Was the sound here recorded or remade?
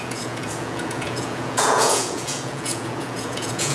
remade